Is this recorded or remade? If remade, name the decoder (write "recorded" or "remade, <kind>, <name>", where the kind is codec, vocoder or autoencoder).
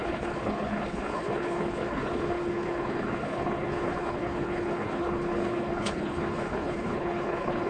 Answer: remade, codec, HILCodec